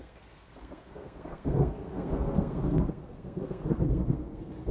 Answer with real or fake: fake